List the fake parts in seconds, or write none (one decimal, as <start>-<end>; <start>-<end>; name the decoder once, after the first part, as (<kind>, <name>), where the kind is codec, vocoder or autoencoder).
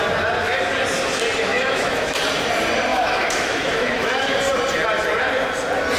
1.5-2.2 (autoencoder, DAC-VAE); 2.9-4.4